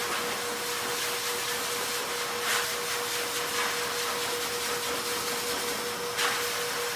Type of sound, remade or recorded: recorded